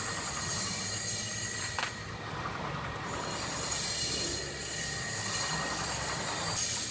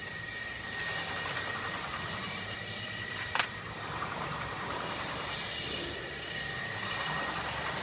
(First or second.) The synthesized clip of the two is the second